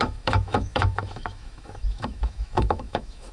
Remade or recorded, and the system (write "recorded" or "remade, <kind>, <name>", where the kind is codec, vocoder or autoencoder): remade, autoencoder, DAC-VAE